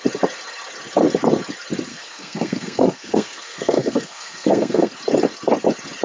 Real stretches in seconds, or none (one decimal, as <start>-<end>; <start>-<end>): 0.0-1.9; 4.9-6.0